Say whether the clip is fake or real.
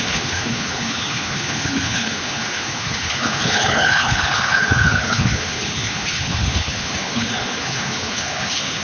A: fake